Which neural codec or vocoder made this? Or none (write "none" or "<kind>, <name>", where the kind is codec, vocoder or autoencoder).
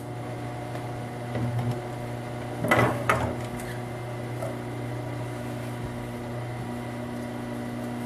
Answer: none